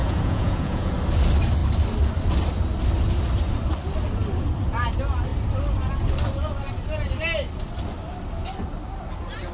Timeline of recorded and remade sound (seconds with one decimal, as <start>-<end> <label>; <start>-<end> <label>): 0.0-0.9 remade; 0.9-9.5 recorded